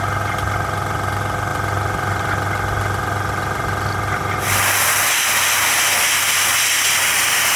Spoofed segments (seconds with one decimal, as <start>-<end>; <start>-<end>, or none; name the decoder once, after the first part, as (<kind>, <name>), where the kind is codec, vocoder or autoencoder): none